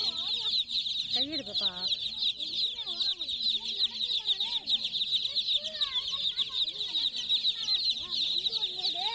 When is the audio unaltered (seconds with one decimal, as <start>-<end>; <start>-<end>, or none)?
0.0-9.1

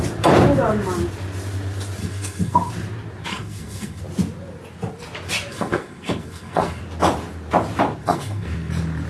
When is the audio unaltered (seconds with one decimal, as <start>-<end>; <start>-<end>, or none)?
0.0-2.0; 2.7-3.3; 4.0-5.5; 6.8-8.0; 8.7-9.1

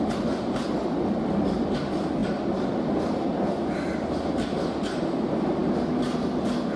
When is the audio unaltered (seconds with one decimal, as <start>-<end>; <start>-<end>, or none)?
0.0-6.8

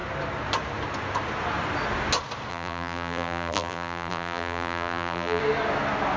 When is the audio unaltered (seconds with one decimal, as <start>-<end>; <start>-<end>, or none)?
0.0-2.5; 5.4-6.2

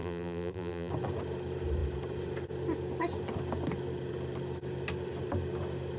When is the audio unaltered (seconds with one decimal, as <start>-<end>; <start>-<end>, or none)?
0.9-6.0